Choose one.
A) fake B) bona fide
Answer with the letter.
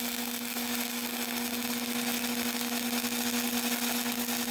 B